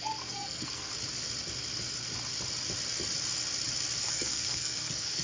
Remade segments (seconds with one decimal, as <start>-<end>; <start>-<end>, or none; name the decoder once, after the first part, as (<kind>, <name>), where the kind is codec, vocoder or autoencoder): 0.0-0.9 (codec, SNAC); 4.0-5.2

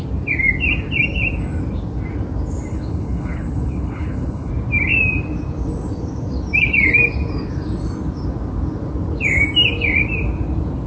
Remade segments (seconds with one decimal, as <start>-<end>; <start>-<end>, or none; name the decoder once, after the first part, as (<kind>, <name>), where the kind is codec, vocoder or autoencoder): 2.7-4.5 (codec, HILCodec)